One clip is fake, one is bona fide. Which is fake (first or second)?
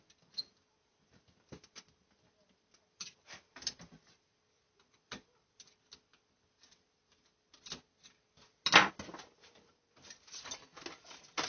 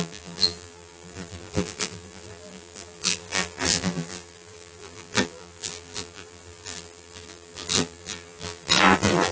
second